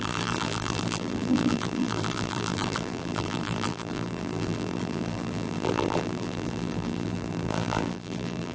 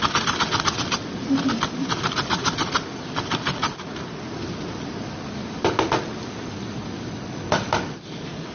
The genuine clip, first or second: second